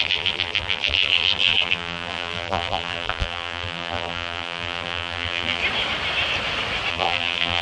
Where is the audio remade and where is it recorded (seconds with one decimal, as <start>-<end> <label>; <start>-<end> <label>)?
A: 0.0-5.6 remade; 5.6-6.9 recorded; 6.9-7.6 remade